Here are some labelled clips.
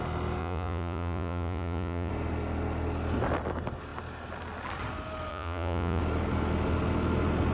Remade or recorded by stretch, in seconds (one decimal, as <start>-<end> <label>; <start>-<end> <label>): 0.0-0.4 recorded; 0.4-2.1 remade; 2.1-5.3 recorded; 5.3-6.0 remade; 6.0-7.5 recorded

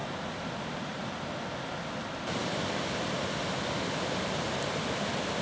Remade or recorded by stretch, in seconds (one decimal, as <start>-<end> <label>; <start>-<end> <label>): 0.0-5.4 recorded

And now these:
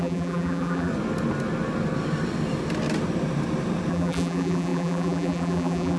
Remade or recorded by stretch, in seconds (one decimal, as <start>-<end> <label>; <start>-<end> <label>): 0.0-0.9 remade; 0.9-3.9 recorded; 3.9-6.0 remade